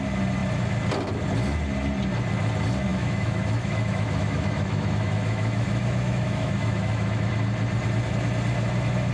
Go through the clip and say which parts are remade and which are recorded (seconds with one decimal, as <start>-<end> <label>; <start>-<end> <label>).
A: 0.0-2.9 recorded; 2.9-7.3 remade; 7.3-9.1 recorded

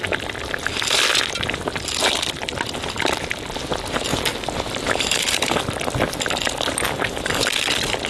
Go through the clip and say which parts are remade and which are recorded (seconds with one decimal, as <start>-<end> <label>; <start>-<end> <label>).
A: 0.0-4.1 recorded; 4.1-5.6 remade; 5.6-8.1 recorded